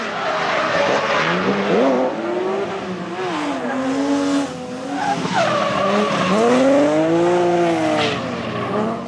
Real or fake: real